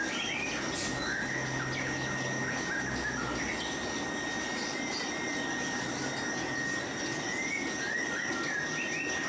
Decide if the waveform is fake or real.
real